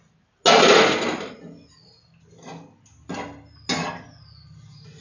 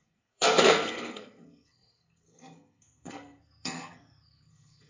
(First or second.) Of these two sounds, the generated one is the second